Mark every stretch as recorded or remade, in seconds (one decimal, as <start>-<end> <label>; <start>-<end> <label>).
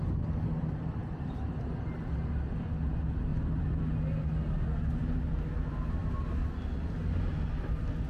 0.0-1.0 recorded; 1.0-1.5 remade; 1.5-3.3 recorded; 3.3-3.8 remade; 3.8-8.1 recorded